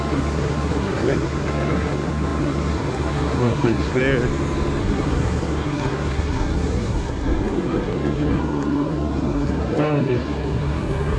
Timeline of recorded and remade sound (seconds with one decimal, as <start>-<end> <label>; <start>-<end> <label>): 0.0-4.0 remade; 4.0-4.8 recorded; 4.8-11.2 remade